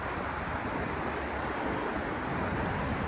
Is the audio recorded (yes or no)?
no